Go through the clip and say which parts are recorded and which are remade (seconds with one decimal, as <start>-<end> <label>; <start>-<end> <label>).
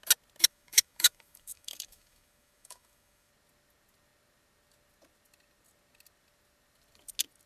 0.0-0.5 recorded; 0.5-3.3 remade; 3.3-7.5 recorded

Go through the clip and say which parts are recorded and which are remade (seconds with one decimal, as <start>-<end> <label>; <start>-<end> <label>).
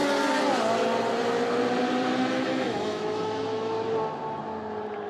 0.0-2.2 recorded; 2.2-3.7 remade; 3.7-5.1 recorded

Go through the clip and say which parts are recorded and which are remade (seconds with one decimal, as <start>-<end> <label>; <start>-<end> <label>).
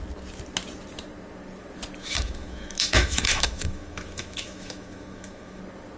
0.0-2.0 recorded; 2.0-5.6 remade; 5.6-6.0 recorded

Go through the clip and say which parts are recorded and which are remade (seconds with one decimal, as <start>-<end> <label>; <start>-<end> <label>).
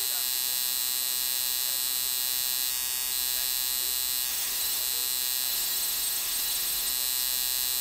0.0-4.3 recorded; 4.3-4.8 remade; 4.8-5.5 recorded; 5.5-6.9 remade; 6.9-7.8 recorded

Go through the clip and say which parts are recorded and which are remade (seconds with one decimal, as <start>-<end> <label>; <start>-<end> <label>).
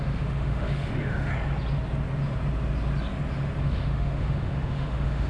0.0-1.3 remade; 1.3-3.6 recorded; 3.6-5.3 remade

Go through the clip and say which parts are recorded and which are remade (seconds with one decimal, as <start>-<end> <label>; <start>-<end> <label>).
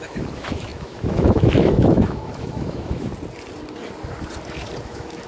0.0-3.1 remade; 3.1-4.8 recorded; 4.8-5.3 remade